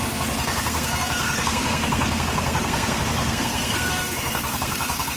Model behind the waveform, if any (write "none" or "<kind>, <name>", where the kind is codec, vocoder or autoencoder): codec, SNAC